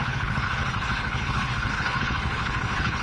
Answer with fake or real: fake